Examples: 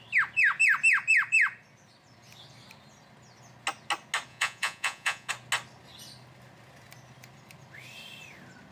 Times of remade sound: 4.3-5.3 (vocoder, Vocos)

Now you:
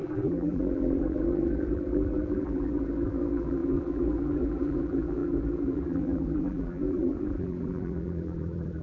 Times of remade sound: 0.0-8.8 (vocoder, BigVGAN v2)

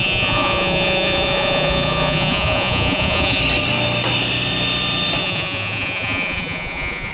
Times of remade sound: 0.0-3.4 (vocoder, Vocos); 5.2-7.1

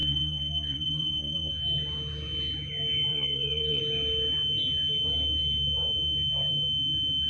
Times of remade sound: 0.0-1.5 (vocoder, Vocos); 3.1-3.8

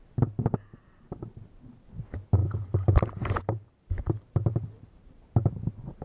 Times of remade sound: 2.4-6.0 (vocoder, BigVGAN v2)

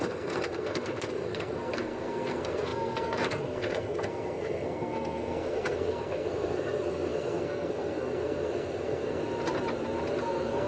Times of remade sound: 0.0-9.2 (codec, SNAC); 10.2-10.7